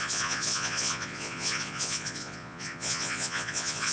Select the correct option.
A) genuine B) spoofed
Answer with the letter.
B